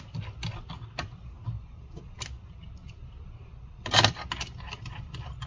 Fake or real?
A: real